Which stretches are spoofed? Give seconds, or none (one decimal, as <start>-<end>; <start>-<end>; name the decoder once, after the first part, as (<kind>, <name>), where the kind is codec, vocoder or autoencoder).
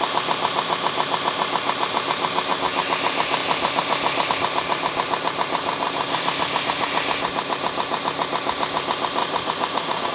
9.2-10.1 (vocoder, Vocos)